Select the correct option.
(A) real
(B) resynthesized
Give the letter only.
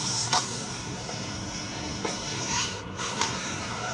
B